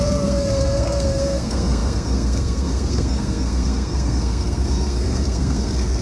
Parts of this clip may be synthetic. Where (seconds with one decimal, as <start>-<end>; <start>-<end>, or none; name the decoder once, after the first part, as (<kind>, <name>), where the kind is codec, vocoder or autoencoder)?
0.0-6.0 (codec, SNAC)